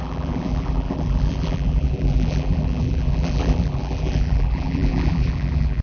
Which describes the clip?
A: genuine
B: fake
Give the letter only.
B